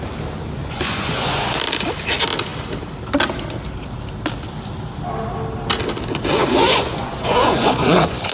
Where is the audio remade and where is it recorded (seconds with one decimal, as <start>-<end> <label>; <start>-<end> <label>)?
0.0-0.6 recorded; 0.6-1.6 remade; 1.6-6.4 recorded; 6.4-8.3 remade